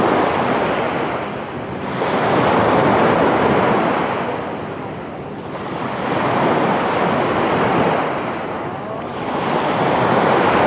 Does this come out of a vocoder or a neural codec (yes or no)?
no